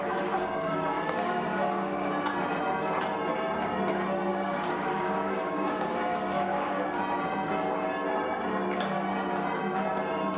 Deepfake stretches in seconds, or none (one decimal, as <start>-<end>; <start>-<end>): 0.0-2.1; 4.3-7.0